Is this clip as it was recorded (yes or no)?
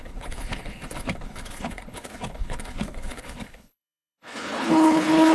no